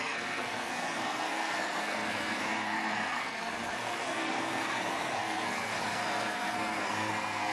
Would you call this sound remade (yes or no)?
yes